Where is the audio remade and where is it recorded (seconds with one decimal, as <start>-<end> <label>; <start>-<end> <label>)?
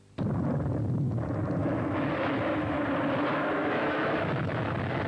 0.0-1.6 recorded; 1.6-2.8 remade; 2.8-3.3 recorded; 3.3-4.6 remade; 4.6-5.1 recorded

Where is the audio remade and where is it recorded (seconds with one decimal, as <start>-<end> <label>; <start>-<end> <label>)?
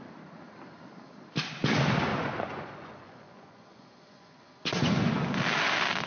0.0-2.1 recorded; 2.1-5.1 remade; 5.1-6.1 recorded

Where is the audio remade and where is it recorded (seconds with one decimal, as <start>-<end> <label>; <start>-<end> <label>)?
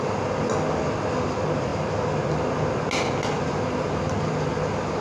0.0-5.0 recorded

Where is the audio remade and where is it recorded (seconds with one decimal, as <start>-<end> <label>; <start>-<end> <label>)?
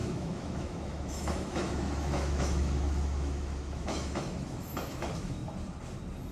0.0-5.4 remade; 5.4-6.3 recorded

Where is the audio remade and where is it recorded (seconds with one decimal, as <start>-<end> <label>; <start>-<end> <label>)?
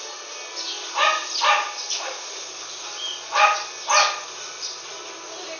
0.0-5.6 recorded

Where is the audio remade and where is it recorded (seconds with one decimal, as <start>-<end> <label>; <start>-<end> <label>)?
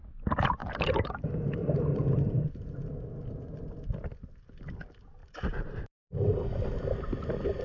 0.0-0.6 recorded; 0.6-2.6 remade; 2.6-5.2 recorded; 5.2-6.5 remade; 6.5-7.6 recorded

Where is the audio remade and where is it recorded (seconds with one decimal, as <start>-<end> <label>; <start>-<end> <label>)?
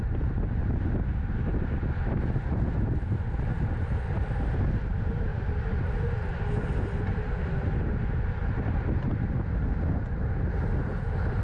0.0-11.4 recorded